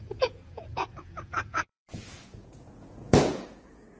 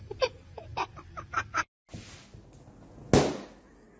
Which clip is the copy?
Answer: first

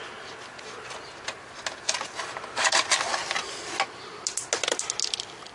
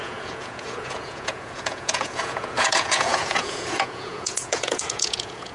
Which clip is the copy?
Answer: second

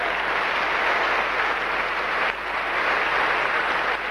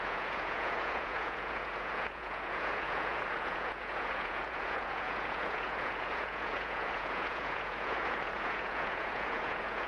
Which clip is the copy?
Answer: second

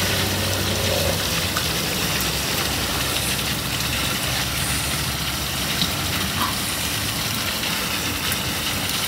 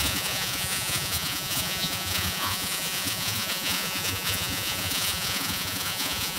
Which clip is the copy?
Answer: second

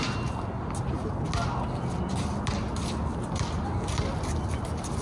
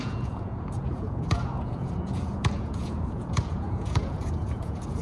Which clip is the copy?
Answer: second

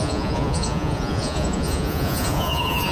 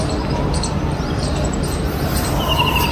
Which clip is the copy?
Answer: first